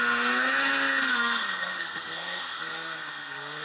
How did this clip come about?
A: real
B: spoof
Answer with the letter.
B